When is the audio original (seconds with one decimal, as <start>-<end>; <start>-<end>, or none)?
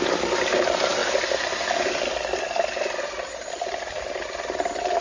0.0-5.0